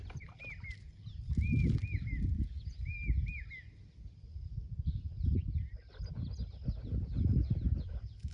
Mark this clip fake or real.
real